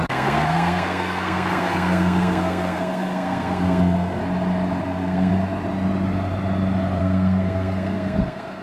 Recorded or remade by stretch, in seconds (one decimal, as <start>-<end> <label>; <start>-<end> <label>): 0.0-4.2 remade; 4.2-4.8 recorded; 4.8-5.3 remade; 5.3-7.0 recorded; 7.0-8.6 remade